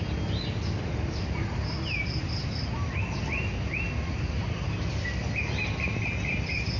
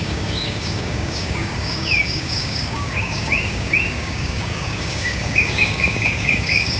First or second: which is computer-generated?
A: second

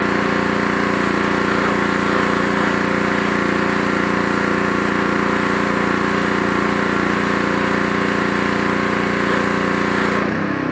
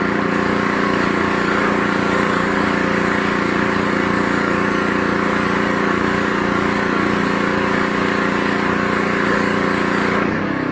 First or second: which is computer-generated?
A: second